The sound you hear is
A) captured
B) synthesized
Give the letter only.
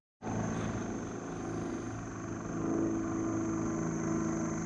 A